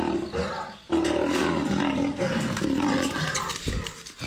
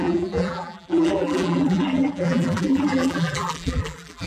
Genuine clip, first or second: first